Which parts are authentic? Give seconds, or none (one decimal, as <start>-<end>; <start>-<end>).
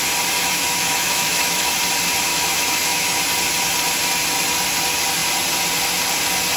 0.0-0.4; 1.7-2.3; 3.2-6.6